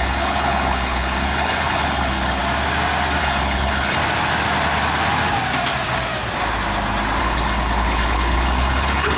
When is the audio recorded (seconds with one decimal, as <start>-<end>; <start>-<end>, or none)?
2.4-3.2; 4.0-7.2